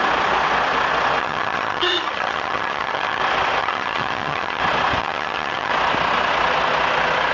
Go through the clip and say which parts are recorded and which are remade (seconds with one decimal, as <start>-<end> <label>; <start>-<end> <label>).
0.0-1.2 recorded; 1.2-3.2 remade; 3.2-3.6 recorded; 3.6-4.6 remade; 4.6-5.0 recorded; 5.0-5.7 remade; 5.7-7.3 recorded